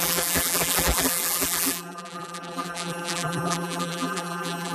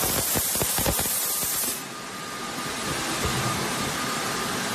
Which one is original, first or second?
second